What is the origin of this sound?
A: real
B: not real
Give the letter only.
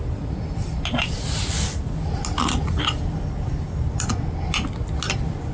A